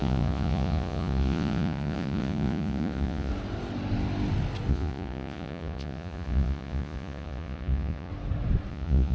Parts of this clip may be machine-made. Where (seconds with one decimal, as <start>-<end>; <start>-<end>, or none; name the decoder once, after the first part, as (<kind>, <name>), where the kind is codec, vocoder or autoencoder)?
0.0-3.3 (vocoder, Vocos); 4.7-8.1; 8.7-9.1